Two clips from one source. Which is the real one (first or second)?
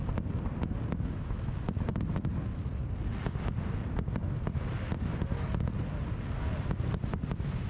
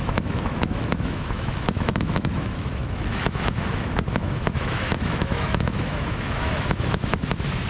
first